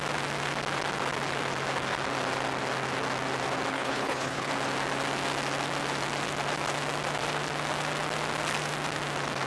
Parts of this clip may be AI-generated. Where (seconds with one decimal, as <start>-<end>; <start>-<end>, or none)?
3.7-4.5